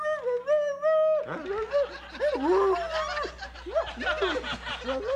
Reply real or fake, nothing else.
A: real